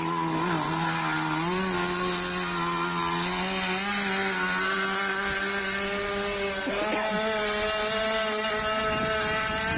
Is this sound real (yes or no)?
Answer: yes